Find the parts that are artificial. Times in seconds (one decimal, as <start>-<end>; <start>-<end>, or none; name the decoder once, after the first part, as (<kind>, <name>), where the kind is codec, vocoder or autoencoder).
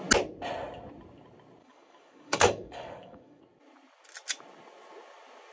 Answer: 1.6-3.4 (codec, DAC)